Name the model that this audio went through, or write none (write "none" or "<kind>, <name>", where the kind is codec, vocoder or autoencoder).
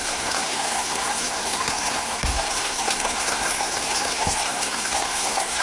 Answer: codec, SNAC